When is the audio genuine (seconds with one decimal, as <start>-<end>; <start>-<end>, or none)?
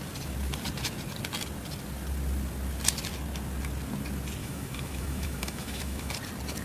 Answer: 0.0-4.4; 6.1-6.6